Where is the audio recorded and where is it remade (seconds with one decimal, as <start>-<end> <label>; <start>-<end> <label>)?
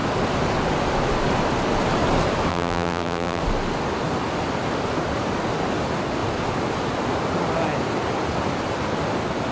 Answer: 0.0-2.5 recorded; 2.5-3.4 remade; 3.4-9.5 recorded